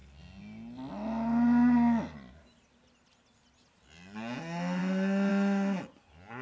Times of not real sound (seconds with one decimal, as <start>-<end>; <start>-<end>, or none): none